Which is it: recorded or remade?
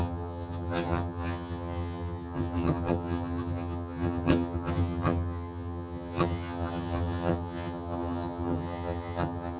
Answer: remade